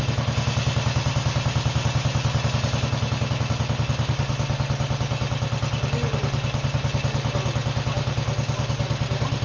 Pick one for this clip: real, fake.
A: real